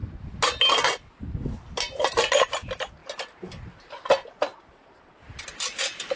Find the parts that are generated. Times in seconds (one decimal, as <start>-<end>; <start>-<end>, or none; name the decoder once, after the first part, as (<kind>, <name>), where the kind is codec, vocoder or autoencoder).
none